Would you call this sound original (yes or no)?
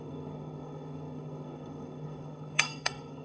no